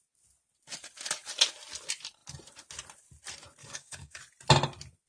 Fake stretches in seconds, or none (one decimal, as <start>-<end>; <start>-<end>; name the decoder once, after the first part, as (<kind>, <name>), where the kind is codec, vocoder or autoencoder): 3.6-4.2 (codec, DAC)